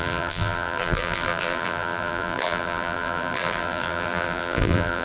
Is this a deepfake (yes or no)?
yes